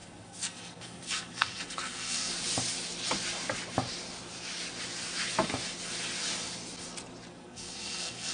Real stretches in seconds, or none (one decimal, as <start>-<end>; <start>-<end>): 2.3-7.3